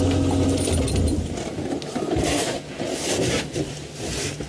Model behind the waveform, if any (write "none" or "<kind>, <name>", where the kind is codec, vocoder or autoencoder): none